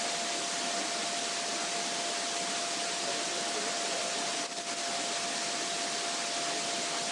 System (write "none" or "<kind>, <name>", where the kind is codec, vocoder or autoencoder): none